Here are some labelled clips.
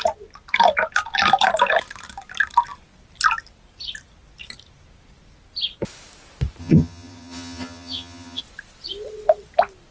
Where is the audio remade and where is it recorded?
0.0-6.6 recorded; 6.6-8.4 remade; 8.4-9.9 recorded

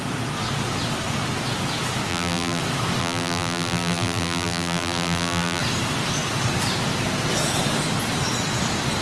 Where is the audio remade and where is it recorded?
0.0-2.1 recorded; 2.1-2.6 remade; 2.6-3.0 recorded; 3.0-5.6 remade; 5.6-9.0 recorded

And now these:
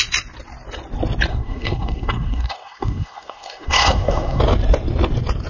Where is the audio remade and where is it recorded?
0.0-1.3 recorded; 1.3-4.4 remade; 4.4-5.5 recorded